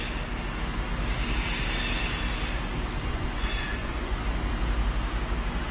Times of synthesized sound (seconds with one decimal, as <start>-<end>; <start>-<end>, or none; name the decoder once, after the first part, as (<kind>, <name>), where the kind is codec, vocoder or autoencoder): 3.1-4.2 (vocoder, Vocos)